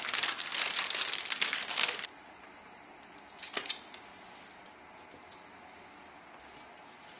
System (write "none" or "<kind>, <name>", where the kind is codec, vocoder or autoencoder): none